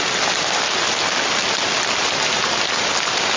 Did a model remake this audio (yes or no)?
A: no